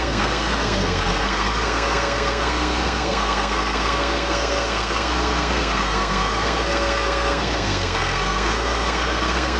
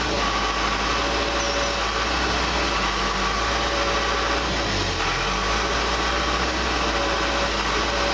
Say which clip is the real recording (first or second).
second